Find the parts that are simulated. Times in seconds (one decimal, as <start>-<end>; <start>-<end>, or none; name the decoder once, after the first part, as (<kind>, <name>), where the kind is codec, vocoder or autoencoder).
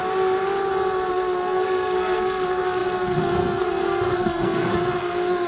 1.1-5.5 (codec, SNAC)